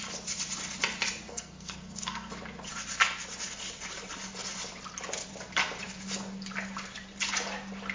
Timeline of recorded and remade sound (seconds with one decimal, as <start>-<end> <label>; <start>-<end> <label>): 0.0-1.3 recorded; 1.3-2.3 remade; 2.3-7.9 recorded